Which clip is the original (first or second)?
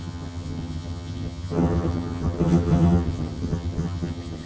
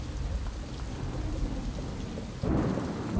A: second